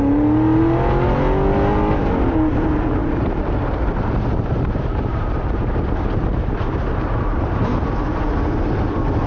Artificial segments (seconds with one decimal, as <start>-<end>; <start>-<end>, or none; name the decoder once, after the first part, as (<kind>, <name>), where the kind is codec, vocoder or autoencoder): 3.0-7.7 (vocoder, BigVGAN v2)